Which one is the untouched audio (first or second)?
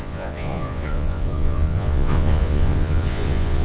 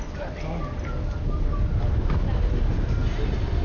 second